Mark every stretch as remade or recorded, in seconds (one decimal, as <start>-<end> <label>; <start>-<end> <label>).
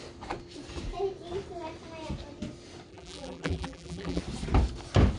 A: 0.0-2.9 recorded; 2.9-4.2 remade; 4.2-5.2 recorded